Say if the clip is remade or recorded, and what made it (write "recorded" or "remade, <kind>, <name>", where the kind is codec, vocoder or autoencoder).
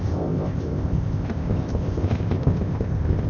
remade, codec, ZipCodec